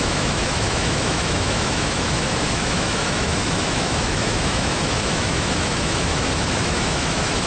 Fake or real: fake